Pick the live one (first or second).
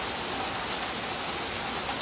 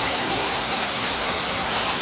first